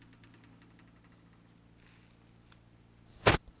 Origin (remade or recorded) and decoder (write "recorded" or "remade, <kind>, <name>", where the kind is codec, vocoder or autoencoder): recorded